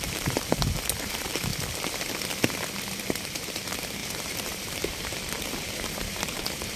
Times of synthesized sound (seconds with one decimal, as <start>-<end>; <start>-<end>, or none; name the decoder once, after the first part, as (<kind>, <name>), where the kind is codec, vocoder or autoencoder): 0.0-1.5 (vocoder, BigVGAN v2); 3.1-6.8